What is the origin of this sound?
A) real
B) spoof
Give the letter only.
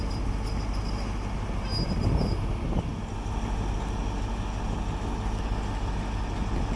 A